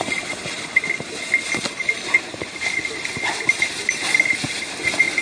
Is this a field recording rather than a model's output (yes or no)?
yes